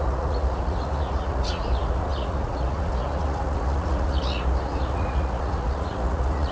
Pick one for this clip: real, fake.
fake